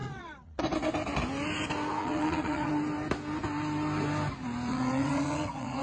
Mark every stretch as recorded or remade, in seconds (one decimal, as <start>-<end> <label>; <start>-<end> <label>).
0.0-0.6 remade; 0.6-2.0 recorded; 2.0-2.7 remade; 2.7-4.7 recorded; 4.7-5.8 remade